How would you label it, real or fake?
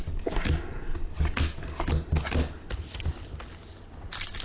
real